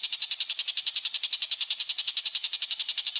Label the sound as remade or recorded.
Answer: recorded